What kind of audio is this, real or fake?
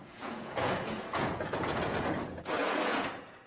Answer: fake